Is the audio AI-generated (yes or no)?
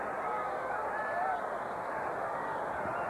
yes